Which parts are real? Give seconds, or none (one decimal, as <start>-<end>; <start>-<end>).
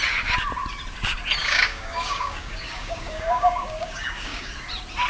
0.0-1.4; 4.5-5.1